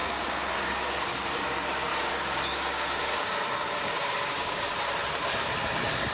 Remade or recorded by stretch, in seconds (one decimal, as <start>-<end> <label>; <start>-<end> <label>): 0.0-0.9 remade; 0.9-1.9 recorded; 1.9-4.6 remade; 4.6-6.1 recorded

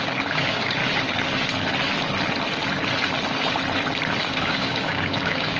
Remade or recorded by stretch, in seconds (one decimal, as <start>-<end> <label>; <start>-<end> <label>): 0.0-0.8 remade; 0.8-4.2 recorded; 4.2-5.6 remade

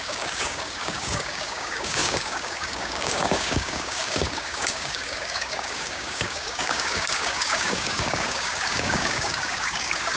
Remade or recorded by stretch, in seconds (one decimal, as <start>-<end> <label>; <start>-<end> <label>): 0.0-10.2 remade

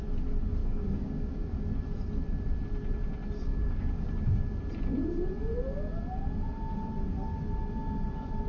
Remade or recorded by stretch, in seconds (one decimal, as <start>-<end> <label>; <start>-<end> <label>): 0.0-0.6 recorded; 0.6-1.5 remade; 1.5-3.5 recorded; 3.5-4.4 remade; 4.4-8.5 recorded

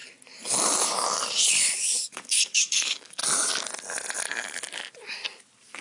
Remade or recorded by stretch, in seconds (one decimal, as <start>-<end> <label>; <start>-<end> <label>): 0.0-2.0 recorded; 2.0-3.2 remade; 3.2-5.8 recorded

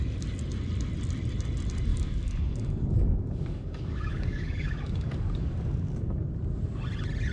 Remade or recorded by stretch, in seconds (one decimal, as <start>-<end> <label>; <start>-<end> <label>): 0.0-1.9 recorded; 1.9-6.3 remade; 6.3-7.3 recorded

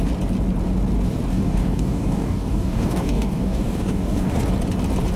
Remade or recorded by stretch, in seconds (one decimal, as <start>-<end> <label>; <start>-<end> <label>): 0.0-1.3 recorded; 1.3-4.4 remade; 4.4-5.2 recorded

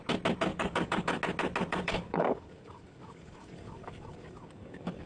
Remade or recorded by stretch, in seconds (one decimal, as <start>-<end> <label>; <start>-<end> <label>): 0.0-0.5 recorded; 0.5-1.2 remade; 1.2-1.7 recorded; 1.7-5.1 remade